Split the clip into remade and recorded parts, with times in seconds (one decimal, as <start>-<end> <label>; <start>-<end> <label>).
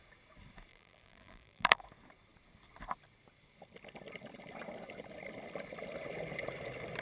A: 0.0-0.7 recorded; 0.7-1.8 remade; 1.8-7.0 recorded